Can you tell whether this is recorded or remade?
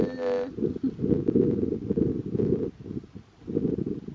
recorded